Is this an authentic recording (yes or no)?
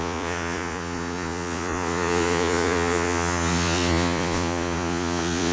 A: no